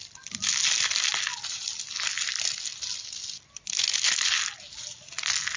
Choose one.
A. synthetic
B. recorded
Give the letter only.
B